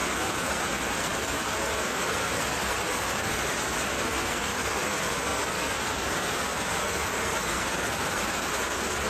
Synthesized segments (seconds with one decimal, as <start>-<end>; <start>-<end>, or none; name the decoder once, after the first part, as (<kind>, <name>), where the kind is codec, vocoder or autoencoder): 0.0-9.1 (codec, SNAC)